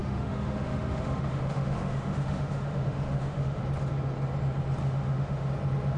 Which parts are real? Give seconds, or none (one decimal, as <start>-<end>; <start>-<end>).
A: 3.6-4.8; 5.5-6.0

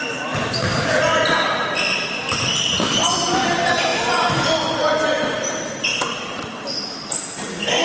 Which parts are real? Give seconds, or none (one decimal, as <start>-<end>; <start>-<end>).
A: 0.0-7.8

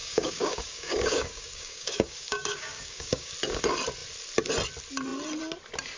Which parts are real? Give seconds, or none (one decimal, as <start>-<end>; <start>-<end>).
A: 3.3-6.0

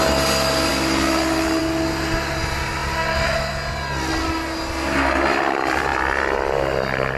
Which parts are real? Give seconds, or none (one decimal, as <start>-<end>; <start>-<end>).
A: 0.0-5.9; 6.8-7.2

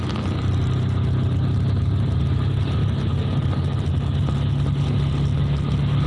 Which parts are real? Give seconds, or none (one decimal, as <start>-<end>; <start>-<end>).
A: 0.0-6.1